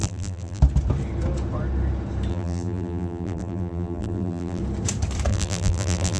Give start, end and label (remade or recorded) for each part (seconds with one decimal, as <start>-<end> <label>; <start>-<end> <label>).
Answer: 0.0-0.6 remade; 0.6-2.3 recorded; 2.3-4.6 remade; 4.6-5.3 recorded; 5.3-6.2 remade